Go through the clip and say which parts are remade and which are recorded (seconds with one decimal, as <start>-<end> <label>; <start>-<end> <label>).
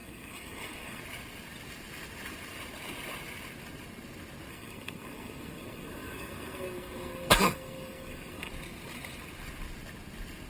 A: 0.0-1.0 remade; 1.0-4.5 recorded; 4.5-8.5 remade; 8.5-10.5 recorded